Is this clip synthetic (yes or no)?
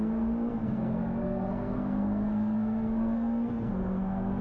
yes